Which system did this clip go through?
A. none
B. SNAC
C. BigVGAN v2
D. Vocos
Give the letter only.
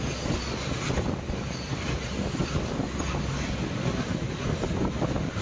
A